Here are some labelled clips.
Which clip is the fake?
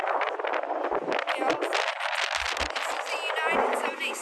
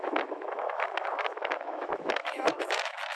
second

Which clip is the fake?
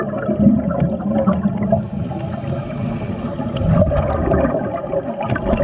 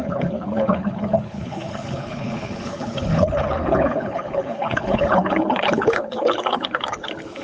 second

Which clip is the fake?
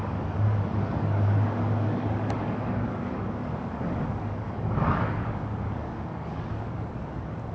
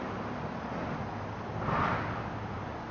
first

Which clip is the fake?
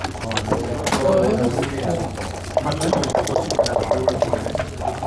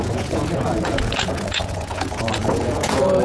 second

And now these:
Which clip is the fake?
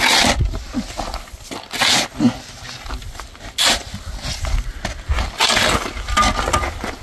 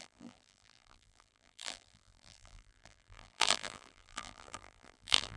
second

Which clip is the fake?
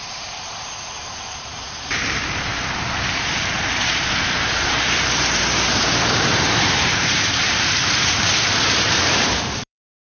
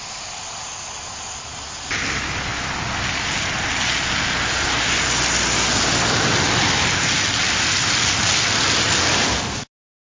first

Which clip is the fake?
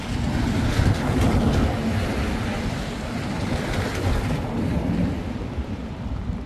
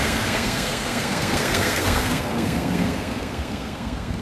second